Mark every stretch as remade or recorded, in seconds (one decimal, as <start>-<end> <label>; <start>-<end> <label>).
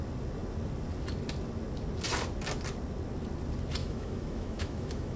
0.0-3.8 recorded; 3.8-5.2 remade